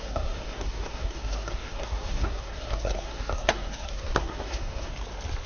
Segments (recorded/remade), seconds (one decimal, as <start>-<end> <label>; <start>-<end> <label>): 0.0-4.9 remade; 4.9-5.5 recorded